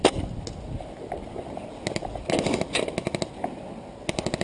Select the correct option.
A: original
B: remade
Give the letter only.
A